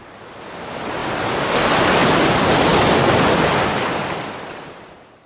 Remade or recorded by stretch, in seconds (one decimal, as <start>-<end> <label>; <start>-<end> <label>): 0.0-5.3 recorded